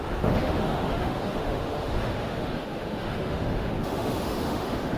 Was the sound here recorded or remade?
remade